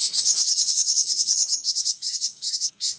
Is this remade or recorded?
remade